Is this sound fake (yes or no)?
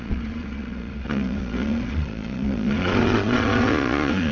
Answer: yes